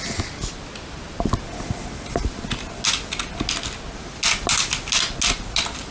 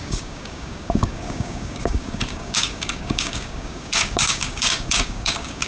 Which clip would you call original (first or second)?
first